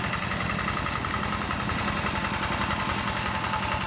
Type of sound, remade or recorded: recorded